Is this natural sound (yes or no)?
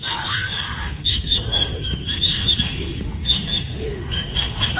no